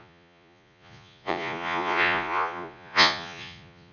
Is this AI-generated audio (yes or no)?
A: yes